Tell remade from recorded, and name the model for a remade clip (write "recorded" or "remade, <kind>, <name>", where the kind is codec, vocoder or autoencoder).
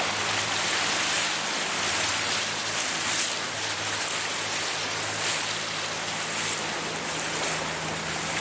recorded